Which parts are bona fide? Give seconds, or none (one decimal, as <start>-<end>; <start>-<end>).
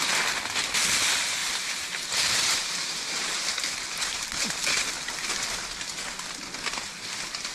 0.0-1.4; 4.9-7.5